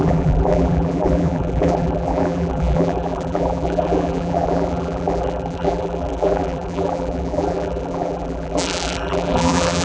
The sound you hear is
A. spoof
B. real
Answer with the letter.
A